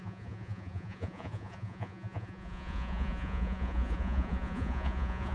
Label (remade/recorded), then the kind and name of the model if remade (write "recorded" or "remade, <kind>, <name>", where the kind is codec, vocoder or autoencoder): remade, vocoder, Vocos